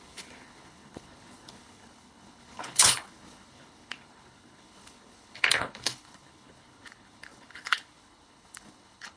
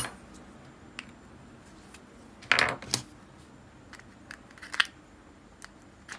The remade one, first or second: first